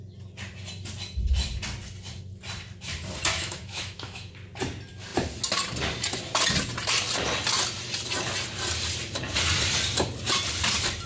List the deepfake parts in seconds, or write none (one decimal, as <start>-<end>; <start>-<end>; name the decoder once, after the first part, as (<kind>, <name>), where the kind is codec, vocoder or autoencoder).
3.3-4.3 (autoencoder, DAC-VAE)